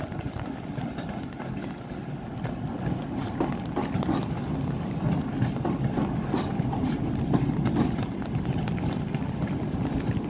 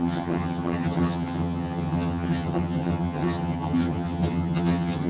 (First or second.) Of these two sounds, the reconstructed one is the second